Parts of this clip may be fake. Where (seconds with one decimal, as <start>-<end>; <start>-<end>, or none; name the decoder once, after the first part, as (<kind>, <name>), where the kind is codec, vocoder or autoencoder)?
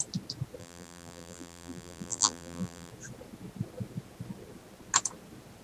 0.6-2.9 (vocoder, BigVGAN v2)